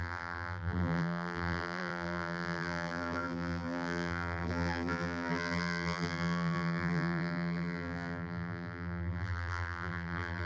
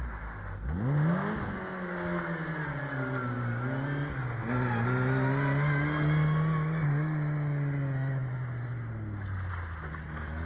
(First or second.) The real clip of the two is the second